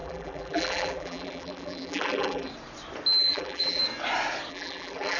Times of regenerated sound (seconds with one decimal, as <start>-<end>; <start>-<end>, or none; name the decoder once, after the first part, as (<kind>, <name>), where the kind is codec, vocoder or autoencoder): 0.0-2.5 (vocoder, BigVGAN v2); 3.2-3.8; 4.5-5.2